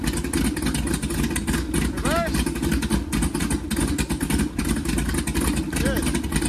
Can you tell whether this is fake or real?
real